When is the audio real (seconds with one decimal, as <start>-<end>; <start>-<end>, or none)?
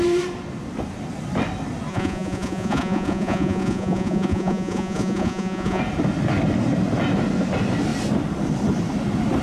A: 0.0-1.9; 5.8-9.4